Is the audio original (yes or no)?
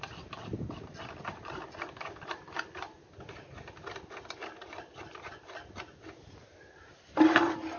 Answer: yes